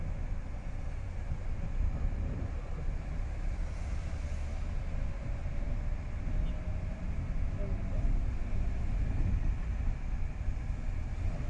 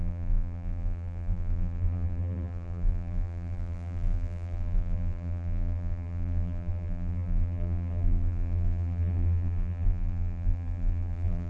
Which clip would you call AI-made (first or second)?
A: second